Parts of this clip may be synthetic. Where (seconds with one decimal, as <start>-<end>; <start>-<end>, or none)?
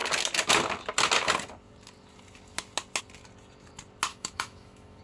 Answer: 4.1-5.0